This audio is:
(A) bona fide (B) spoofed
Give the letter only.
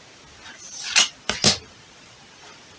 A